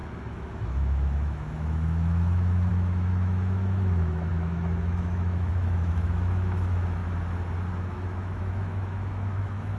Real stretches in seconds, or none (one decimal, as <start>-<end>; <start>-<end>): 7.0-7.8